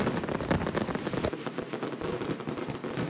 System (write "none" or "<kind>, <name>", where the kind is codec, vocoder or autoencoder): none